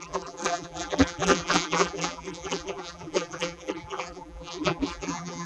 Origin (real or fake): fake